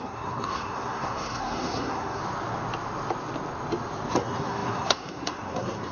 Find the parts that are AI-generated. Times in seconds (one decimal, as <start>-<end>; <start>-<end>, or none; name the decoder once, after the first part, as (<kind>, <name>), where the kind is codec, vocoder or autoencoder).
0.0-2.2 (codec, SNAC); 4.1-5.9